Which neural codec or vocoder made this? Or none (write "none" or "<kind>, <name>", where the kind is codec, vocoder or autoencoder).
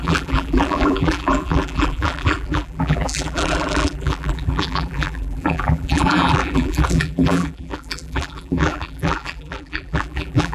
vocoder, BigVGAN v2